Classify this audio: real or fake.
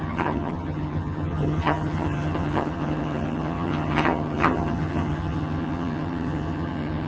fake